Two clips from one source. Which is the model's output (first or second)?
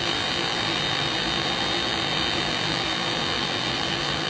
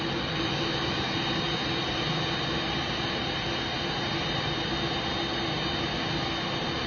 first